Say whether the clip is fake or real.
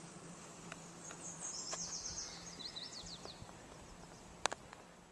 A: real